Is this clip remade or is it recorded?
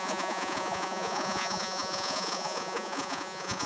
remade